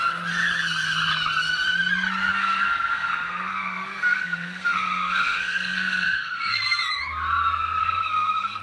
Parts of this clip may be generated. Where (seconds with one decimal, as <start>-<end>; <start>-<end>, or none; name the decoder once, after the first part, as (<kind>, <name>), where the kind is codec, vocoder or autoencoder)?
2.3-6.8 (codec, SNAC); 7.8-8.6